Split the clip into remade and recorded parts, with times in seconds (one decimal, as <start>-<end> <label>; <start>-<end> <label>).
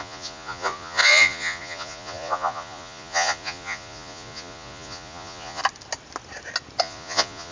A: 0.0-5.6 remade; 5.6-6.8 recorded; 6.8-7.5 remade